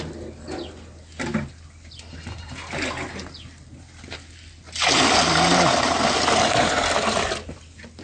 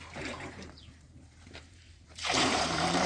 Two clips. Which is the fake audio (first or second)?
second